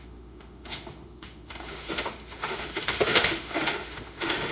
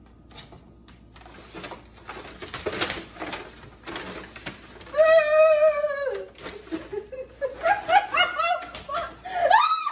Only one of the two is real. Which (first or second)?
second